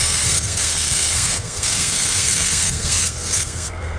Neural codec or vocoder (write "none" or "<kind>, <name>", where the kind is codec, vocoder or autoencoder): codec, SNAC